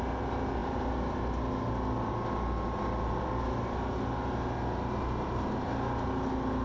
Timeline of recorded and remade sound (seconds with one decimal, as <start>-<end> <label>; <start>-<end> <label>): 0.0-6.6 recorded